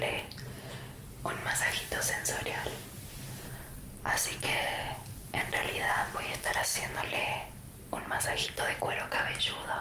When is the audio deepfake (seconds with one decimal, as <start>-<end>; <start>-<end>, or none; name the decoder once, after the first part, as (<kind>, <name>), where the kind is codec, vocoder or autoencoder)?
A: 1.4-2.5 (vocoder, BigVGAN v2)